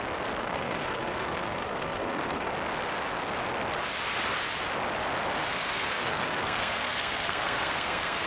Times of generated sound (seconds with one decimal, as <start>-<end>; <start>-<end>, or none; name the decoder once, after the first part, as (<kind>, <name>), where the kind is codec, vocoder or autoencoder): 0.4-2.5 (codec, SNAC); 5.4-8.3